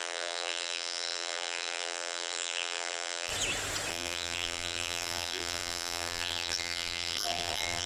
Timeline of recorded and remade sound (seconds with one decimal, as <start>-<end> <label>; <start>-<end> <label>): 0.0-3.3 remade; 3.3-3.9 recorded; 3.9-7.9 remade